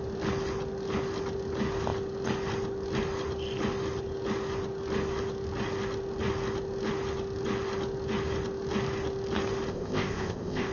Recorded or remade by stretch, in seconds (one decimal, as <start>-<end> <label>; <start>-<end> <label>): 0.0-9.7 recorded; 9.7-10.7 remade